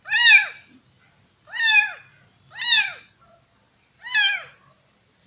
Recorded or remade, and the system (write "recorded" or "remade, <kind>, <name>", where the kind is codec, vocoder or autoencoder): recorded